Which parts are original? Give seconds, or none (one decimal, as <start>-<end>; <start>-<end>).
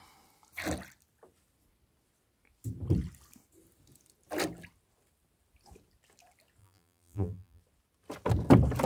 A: 0.0-6.6; 7.6-8.9